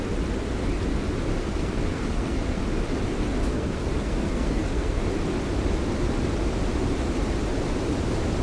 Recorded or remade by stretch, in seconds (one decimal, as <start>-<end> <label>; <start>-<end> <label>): 0.0-1.3 recorded; 1.3-2.6 remade; 2.6-3.5 recorded; 3.5-5.0 remade; 5.0-8.4 recorded